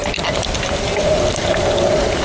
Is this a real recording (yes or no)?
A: yes